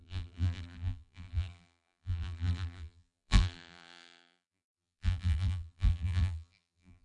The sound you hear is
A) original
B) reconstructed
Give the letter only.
B